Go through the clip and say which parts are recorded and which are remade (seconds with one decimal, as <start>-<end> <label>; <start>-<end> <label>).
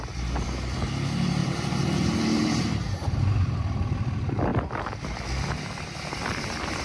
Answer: 0.0-1.4 recorded; 1.4-3.6 remade; 3.6-6.8 recorded